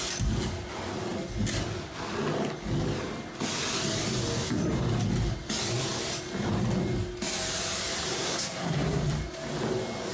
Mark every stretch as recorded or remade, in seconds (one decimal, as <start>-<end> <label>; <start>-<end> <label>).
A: 0.0-8.1 recorded; 8.1-9.0 remade; 9.0-10.1 recorded